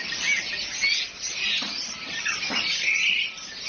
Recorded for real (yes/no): yes